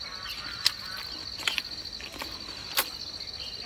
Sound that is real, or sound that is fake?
real